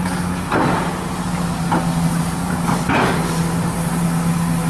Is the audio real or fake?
real